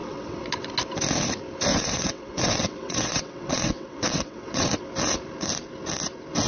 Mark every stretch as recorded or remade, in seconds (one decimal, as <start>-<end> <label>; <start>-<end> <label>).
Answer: 0.0-0.7 remade; 0.7-1.7 recorded; 1.7-4.8 remade; 4.8-6.5 recorded